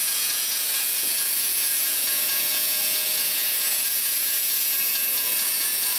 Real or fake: fake